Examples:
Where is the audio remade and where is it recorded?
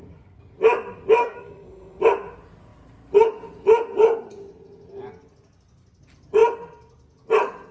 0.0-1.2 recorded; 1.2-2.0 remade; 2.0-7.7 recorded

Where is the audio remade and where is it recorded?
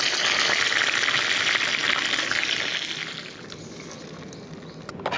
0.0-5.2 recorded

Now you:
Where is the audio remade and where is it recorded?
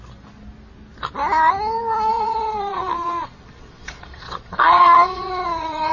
0.0-2.1 recorded; 2.1-5.9 remade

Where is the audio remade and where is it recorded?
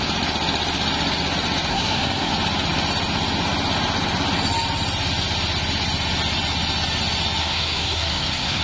0.0-1.7 recorded; 1.7-2.3 remade; 2.3-7.4 recorded; 7.4-8.6 remade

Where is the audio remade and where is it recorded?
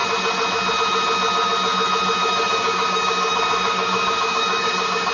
0.0-2.2 recorded; 2.2-5.1 remade